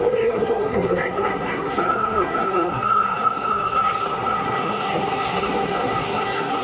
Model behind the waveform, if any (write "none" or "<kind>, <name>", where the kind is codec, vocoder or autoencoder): codec, SNAC